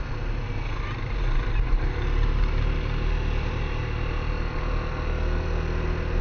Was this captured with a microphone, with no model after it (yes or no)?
yes